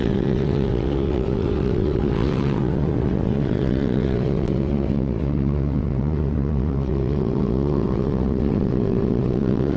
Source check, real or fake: fake